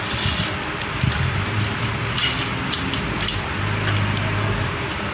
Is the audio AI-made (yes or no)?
no